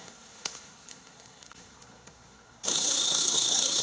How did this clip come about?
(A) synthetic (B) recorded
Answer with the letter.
A